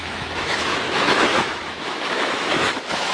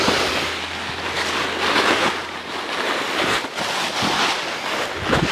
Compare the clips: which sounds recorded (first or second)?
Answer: second